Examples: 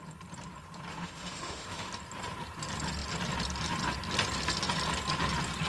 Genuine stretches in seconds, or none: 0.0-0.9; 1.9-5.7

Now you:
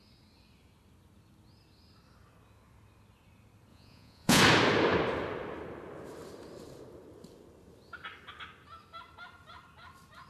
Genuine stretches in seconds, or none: 0.0-3.7; 4.4-10.3

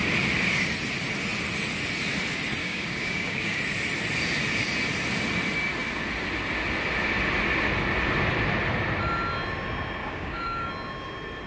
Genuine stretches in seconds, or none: 0.0-2.6; 3.6-10.0; 10.7-11.5

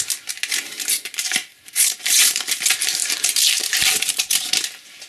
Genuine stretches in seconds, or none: 0.0-1.5; 2.4-3.0; 4.3-5.1